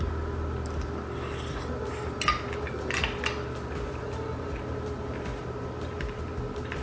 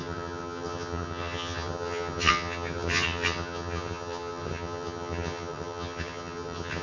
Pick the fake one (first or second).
second